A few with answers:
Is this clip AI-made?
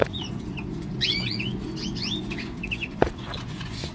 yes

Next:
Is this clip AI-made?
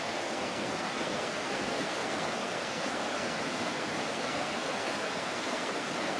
yes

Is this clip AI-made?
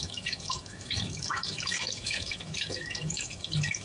yes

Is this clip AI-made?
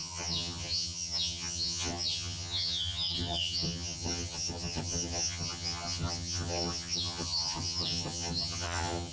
yes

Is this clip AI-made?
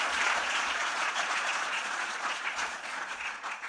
yes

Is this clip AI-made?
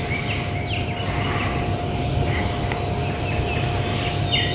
no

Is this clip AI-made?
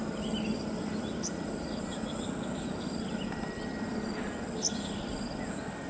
no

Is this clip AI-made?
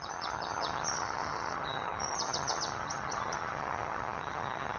yes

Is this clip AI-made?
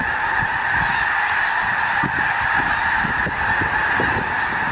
no